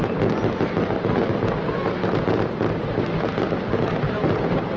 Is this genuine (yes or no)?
yes